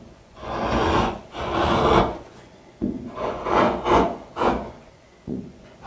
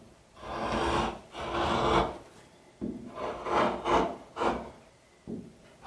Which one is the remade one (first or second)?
first